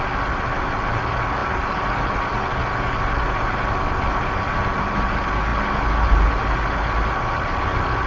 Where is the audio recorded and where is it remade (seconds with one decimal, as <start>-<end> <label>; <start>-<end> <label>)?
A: 0.0-8.1 recorded